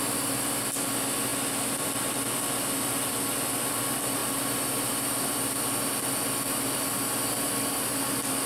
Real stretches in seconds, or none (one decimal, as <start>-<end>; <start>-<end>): 0.0-8.5